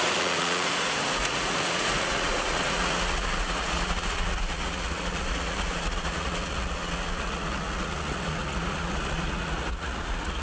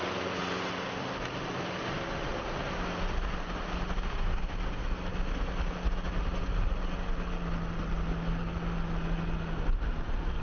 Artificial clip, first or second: first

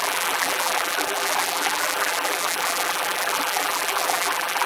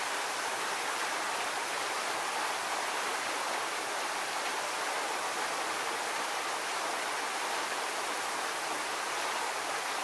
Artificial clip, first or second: first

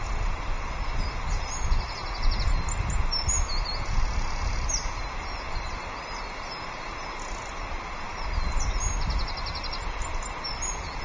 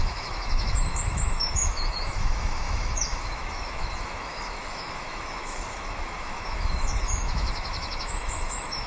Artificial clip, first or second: second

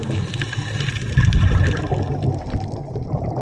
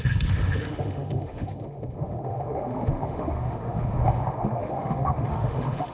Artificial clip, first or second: second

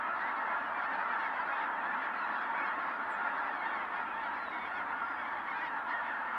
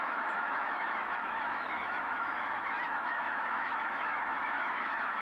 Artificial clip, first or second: second